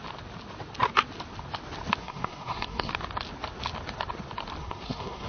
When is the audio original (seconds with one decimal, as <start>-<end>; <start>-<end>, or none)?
0.0-2.0; 2.9-4.6